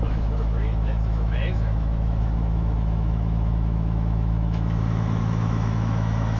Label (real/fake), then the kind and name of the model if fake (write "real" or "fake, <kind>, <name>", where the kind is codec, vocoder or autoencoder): fake, autoencoder, DAC-VAE